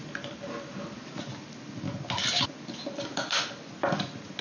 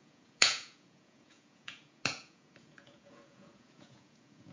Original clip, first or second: first